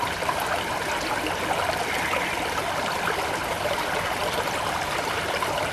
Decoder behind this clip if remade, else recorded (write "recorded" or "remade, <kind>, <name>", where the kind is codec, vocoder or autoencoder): recorded